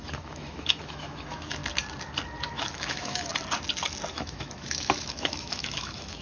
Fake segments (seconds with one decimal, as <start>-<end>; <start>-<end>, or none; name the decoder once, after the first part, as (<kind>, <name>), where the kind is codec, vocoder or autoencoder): 0.0-1.6 (autoencoder, DAC-VAE); 2.5-3.3; 4.1-6.2